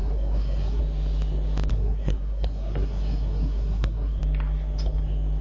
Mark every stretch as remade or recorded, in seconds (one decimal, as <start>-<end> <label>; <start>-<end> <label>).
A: 0.0-0.8 remade; 0.8-1.7 recorded; 1.7-4.2 remade; 4.2-5.4 recorded